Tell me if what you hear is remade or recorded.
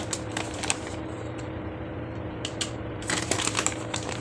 remade